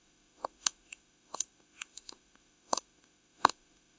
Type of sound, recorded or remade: remade